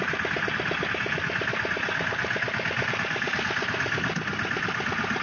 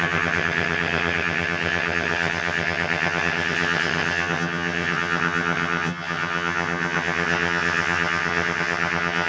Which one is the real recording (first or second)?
first